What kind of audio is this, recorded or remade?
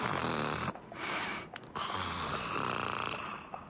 recorded